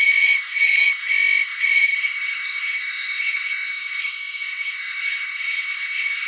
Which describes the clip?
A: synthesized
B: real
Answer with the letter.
A